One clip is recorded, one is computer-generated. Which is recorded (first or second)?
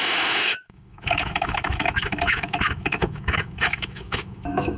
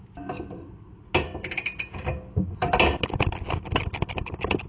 second